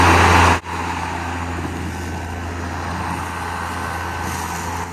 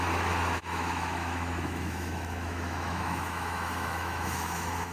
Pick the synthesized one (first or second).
second